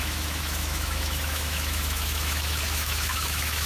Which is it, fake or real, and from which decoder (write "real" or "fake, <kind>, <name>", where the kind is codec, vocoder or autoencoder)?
fake, autoencoder, DAC-VAE